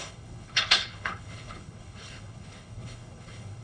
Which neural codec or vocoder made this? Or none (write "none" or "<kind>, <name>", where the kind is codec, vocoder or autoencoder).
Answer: codec, HILCodec